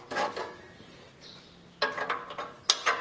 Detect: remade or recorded recorded